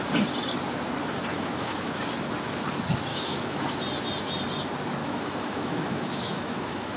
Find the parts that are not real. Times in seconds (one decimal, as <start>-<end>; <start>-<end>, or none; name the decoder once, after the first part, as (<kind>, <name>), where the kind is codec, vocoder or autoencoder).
1.3-2.0 (autoencoder, DAC-VAE); 3.1-3.6; 5.0-7.0